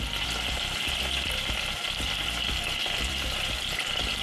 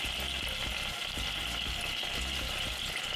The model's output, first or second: first